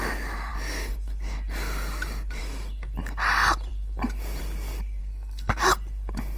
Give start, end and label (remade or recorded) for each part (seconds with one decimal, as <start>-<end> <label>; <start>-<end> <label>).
0.0-5.0 recorded; 5.0-5.6 remade; 5.6-6.4 recorded

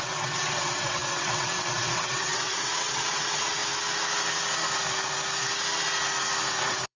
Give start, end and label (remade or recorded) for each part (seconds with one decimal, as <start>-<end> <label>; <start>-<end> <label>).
0.0-3.6 remade; 3.6-6.6 recorded; 6.6-7.0 remade